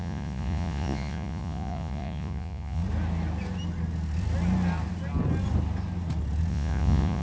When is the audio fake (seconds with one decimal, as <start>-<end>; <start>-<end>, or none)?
0.0-2.8; 6.5-7.2